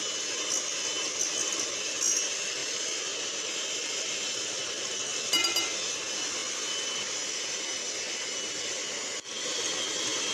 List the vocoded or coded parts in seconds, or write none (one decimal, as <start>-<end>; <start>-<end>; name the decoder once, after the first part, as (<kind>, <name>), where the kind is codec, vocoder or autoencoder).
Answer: 2.6-4.1 (vocoder, BigVGAN v2)